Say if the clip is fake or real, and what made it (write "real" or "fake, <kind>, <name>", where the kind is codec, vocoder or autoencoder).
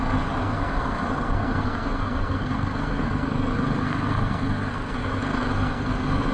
fake, codec, SNAC